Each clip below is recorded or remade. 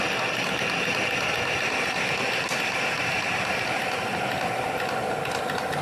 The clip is recorded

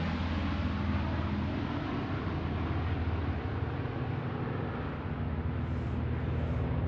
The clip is recorded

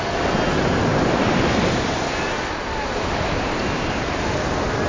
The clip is recorded